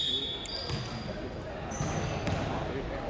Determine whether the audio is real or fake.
real